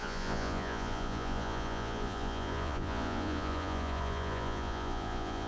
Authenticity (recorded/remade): remade